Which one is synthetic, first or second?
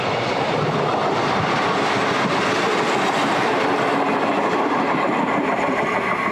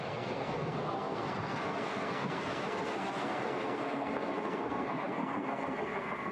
second